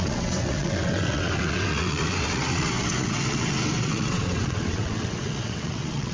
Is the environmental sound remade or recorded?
remade